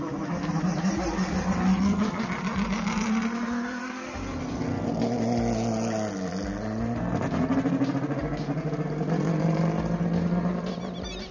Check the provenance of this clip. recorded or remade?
recorded